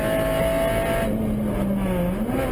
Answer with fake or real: real